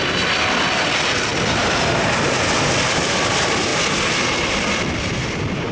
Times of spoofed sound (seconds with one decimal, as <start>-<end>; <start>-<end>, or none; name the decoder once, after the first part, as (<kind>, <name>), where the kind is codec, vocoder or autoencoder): none